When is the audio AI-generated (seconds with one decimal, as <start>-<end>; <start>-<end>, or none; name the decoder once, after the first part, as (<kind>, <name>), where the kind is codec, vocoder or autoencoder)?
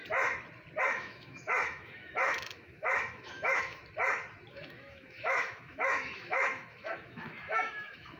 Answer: 0.8-3.8 (autoencoder, DAC-VAE); 4.5-8.2